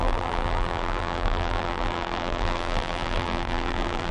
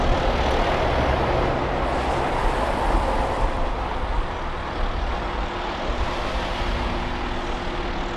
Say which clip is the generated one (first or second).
first